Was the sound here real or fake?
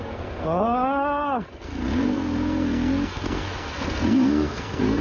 fake